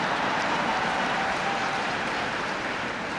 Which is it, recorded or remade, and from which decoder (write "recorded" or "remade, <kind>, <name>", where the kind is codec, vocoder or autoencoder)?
remade, vocoder, BigVGAN v2